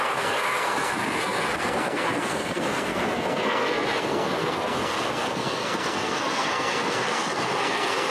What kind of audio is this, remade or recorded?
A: remade